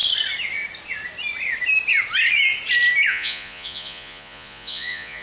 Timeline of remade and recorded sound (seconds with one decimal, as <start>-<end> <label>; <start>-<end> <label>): 0.0-3.1 recorded; 3.1-5.2 remade